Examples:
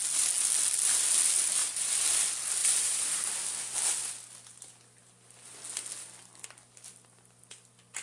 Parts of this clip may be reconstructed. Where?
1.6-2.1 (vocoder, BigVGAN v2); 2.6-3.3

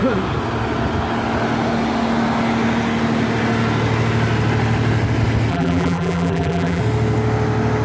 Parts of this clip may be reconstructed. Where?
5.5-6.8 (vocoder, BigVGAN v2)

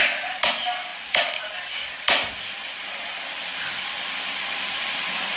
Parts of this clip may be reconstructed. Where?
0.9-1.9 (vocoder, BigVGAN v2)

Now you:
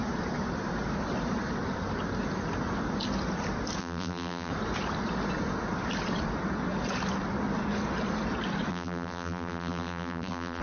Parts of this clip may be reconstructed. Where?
3.8-4.5 (vocoder, BigVGAN v2); 8.7-10.6